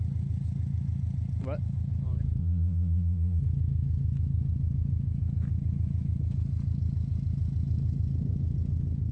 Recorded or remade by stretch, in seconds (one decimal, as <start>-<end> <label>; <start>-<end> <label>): 0.0-2.4 recorded; 2.4-3.4 remade; 3.4-9.1 recorded